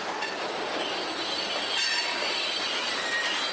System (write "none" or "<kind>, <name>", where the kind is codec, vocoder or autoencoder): vocoder, BigVGAN v2